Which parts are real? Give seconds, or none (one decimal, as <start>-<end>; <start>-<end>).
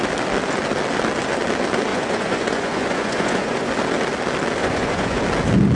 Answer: 0.0-1.9; 3.7-4.6; 5.2-5.8